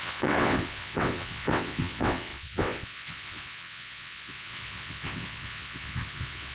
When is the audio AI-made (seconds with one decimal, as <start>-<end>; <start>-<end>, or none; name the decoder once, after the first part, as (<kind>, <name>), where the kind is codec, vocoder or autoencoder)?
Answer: 0.0-6.5 (vocoder, WaveNeXt)